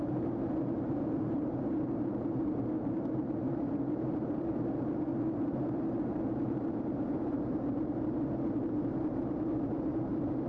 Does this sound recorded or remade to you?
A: remade